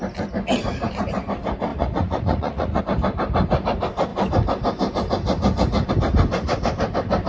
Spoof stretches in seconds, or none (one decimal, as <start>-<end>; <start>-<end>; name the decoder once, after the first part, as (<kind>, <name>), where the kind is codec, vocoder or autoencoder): 1.7-2.8 (vocoder, Vocos)